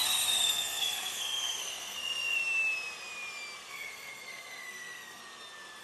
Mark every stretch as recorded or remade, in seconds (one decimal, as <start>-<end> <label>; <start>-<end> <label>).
0.0-2.4 remade; 2.4-3.7 recorded; 3.7-5.2 remade; 5.2-5.8 recorded